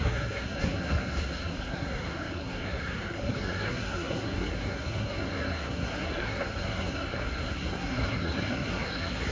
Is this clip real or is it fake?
fake